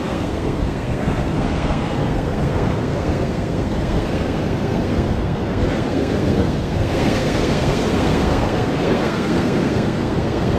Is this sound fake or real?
fake